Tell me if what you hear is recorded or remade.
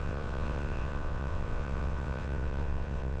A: remade